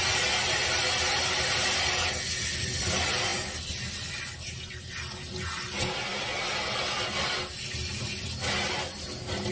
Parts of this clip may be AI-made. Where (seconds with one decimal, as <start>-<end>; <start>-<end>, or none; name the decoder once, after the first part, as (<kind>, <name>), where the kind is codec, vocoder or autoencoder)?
none

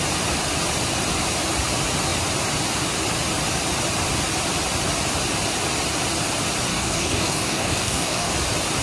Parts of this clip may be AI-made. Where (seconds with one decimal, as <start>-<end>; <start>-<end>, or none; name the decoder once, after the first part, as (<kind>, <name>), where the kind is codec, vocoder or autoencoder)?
6.7-8.3 (codec, DAC)